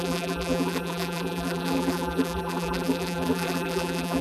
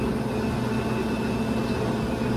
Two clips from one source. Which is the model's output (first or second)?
first